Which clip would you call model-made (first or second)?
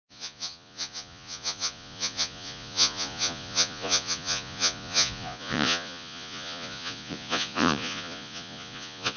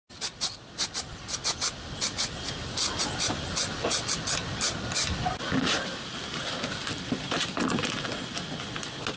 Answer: first